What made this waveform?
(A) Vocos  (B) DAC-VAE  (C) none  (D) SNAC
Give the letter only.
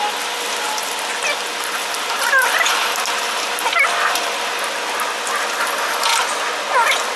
C